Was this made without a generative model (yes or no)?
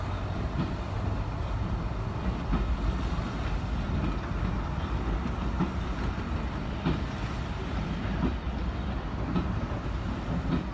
yes